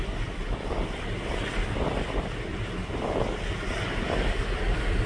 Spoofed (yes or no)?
yes